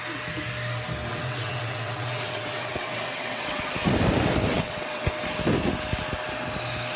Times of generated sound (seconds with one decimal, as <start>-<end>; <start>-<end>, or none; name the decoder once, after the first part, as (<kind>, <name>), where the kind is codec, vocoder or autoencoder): 1.1-3.7 (vocoder, WaveNeXt); 4.5-5.1